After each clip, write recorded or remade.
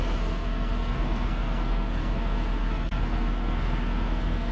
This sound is remade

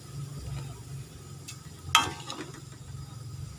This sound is recorded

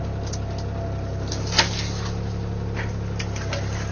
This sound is recorded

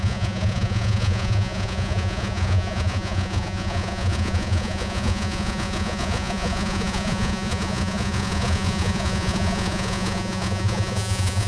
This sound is remade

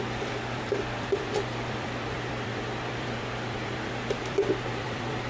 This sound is remade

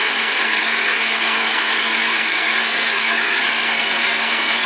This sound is remade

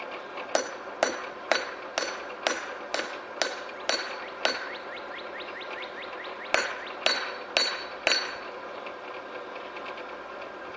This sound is recorded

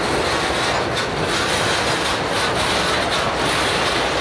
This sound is recorded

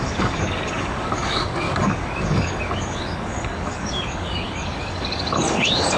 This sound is remade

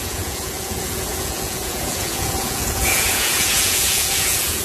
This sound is remade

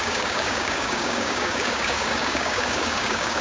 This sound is remade